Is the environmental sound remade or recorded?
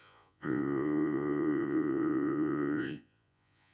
remade